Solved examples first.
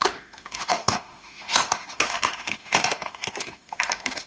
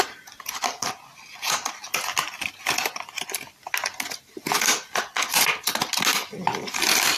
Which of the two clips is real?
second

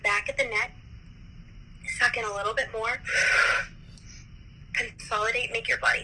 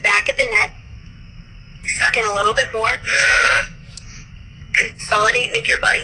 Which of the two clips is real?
first